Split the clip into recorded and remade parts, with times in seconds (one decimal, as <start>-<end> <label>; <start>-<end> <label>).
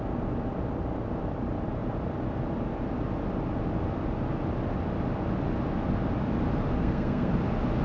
0.0-6.8 recorded; 6.8-7.3 remade; 7.3-7.8 recorded